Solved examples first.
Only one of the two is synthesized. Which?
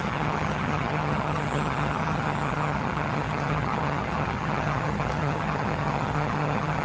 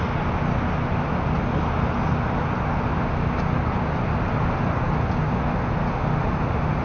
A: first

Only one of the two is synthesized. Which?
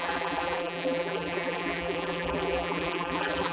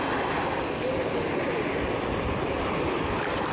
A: first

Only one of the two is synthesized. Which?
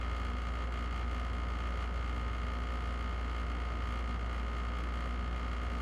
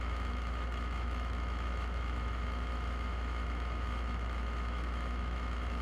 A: second